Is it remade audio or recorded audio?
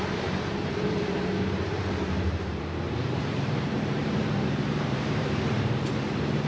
remade